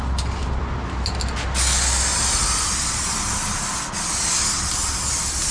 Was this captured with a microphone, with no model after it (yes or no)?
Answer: yes